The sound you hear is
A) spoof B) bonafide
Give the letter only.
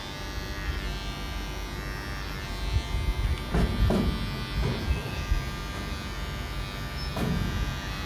B